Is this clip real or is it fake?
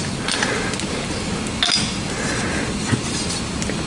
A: real